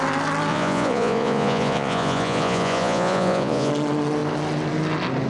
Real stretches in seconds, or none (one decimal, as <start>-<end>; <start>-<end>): 0.0-0.5; 3.7-5.3